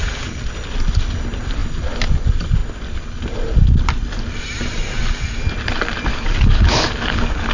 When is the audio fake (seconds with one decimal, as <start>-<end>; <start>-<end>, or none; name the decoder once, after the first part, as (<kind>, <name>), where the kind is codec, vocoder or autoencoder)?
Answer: 6.1-7.5 (codec, DAC)